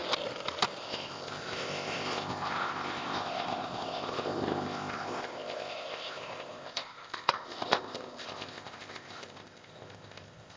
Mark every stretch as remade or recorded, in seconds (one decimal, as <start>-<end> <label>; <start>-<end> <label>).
0.0-0.8 recorded; 0.8-10.6 remade

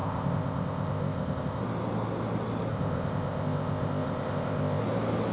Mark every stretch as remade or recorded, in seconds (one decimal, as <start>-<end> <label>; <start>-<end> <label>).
0.0-1.6 remade; 1.6-2.7 recorded; 2.7-4.8 remade; 4.8-5.3 recorded